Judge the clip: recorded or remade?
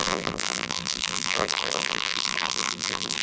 remade